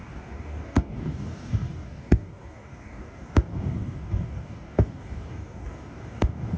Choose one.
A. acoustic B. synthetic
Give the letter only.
B